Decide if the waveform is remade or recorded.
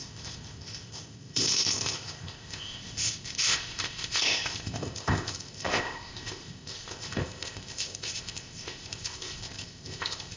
remade